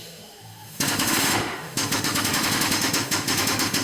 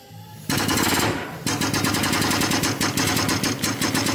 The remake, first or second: first